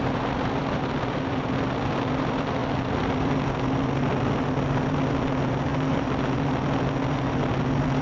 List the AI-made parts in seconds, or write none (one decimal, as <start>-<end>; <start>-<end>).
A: none